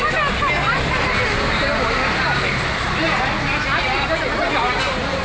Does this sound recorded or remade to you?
recorded